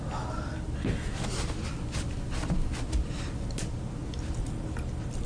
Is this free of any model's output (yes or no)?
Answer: yes